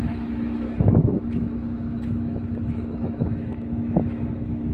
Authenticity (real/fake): fake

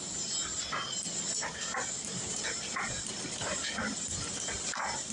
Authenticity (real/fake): real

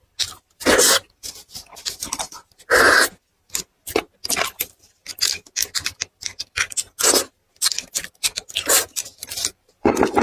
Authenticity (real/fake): real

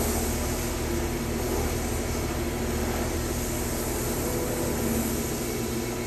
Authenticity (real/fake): real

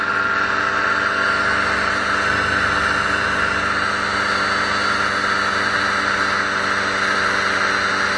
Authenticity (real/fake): real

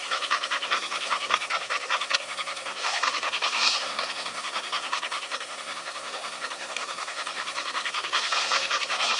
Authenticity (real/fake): fake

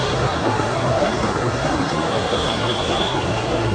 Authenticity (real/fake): fake